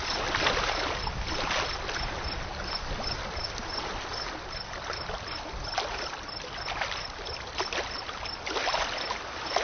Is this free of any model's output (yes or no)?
yes